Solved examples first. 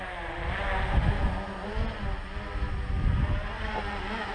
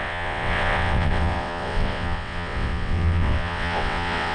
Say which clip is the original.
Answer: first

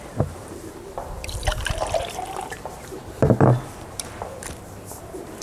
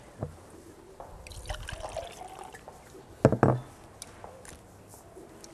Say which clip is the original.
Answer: second